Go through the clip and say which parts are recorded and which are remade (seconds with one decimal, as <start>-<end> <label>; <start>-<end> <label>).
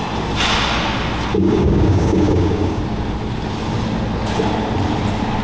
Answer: 0.0-1.3 recorded; 1.3-2.8 remade; 2.8-5.4 recorded